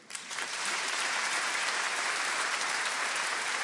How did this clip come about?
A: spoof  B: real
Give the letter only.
A